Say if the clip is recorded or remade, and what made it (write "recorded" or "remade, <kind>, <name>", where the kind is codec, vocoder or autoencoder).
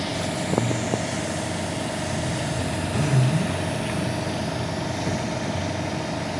recorded